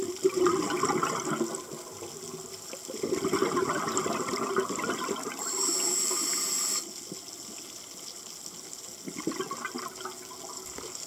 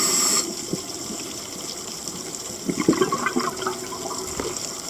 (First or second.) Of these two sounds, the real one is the first